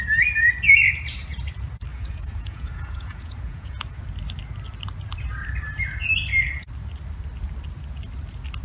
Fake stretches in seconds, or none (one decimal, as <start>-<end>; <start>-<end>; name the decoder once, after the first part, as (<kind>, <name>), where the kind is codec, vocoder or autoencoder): 1.9-4.0 (vocoder, Vocos)